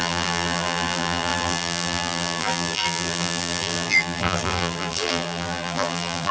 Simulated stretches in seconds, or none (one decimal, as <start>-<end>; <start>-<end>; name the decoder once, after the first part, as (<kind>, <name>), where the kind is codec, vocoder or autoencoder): 0.0-6.3 (vocoder, BigVGAN v2)